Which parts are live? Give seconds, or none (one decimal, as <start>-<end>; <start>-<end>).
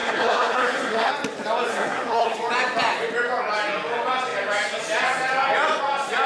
1.1-1.7; 2.4-6.3